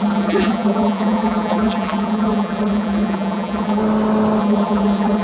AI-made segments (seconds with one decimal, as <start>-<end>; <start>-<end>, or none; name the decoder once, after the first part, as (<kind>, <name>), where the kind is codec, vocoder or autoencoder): 0.0-3.8 (vocoder, BigVGAN v2); 4.4-5.2